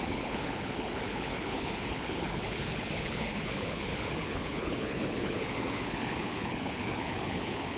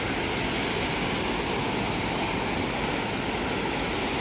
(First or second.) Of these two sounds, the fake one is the first